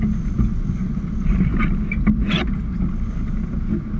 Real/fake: real